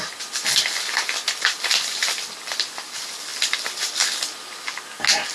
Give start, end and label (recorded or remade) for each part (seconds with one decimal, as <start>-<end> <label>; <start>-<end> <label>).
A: 0.0-5.3 recorded